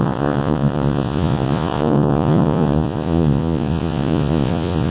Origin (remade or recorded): remade